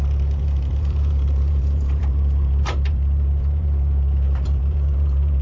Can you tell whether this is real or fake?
fake